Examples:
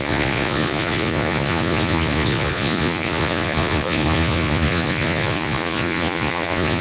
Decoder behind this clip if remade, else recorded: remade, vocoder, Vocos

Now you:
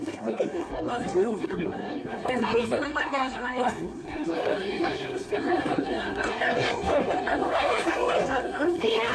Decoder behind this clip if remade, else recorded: remade, codec, SNAC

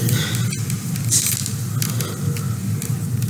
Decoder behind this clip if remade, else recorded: recorded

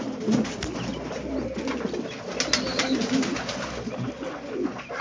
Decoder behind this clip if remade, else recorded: recorded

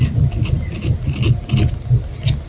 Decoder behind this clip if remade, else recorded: recorded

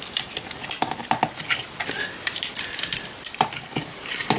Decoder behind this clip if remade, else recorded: remade, vocoder, BigVGAN v2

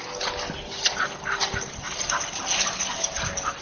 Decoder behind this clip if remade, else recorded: recorded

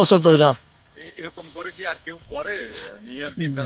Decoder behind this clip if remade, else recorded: remade, codec, SNAC